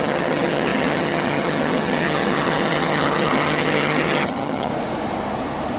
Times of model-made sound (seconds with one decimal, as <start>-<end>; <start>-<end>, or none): 0.0-4.7